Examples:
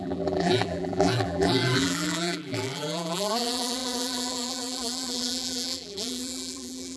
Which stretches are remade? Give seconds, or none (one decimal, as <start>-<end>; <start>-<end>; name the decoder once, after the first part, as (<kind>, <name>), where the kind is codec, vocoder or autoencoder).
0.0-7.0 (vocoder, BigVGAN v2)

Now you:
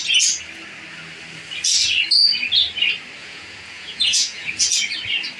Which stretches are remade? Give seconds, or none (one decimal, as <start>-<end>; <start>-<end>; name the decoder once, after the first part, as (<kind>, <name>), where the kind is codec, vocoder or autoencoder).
3.2-4.6 (vocoder, Vocos)

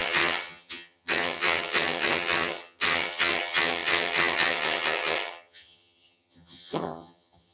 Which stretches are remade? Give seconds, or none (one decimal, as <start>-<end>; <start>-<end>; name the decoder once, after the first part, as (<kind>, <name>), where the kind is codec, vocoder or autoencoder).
0.0-7.5 (vocoder, HiFi-GAN)